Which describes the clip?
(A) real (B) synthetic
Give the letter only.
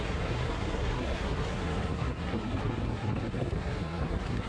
B